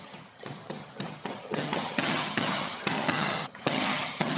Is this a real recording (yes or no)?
no